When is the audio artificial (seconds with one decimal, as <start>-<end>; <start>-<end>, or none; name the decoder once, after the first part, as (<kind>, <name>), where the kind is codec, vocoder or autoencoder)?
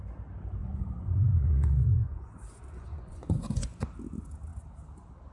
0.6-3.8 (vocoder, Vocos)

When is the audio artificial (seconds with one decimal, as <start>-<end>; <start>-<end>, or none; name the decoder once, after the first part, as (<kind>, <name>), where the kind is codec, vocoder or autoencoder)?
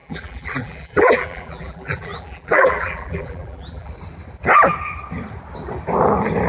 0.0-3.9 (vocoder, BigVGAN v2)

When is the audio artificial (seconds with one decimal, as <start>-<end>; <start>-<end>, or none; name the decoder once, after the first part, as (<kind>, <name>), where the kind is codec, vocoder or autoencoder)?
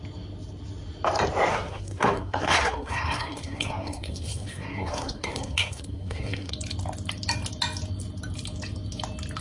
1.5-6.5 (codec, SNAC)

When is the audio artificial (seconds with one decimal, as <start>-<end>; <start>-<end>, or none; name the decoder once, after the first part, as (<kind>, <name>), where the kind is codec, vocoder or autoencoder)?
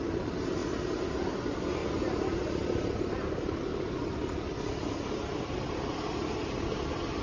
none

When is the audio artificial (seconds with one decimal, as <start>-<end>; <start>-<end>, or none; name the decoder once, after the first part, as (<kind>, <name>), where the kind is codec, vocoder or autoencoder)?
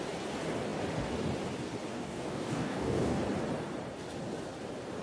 1.9-3.2 (codec, DAC)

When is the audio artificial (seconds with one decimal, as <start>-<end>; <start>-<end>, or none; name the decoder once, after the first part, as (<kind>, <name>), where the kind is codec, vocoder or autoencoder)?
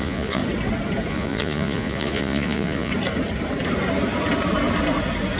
0.0-0.4 (vocoder, Vocos); 1.1-2.9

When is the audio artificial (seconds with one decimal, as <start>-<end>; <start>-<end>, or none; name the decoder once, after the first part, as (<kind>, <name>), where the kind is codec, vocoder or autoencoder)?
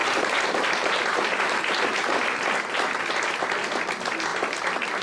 0.0-3.0 (vocoder, BigVGAN v2)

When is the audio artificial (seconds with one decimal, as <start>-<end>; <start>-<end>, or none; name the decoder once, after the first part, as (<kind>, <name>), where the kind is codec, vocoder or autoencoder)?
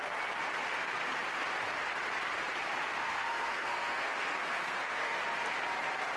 2.9-5.2 (codec, SNAC)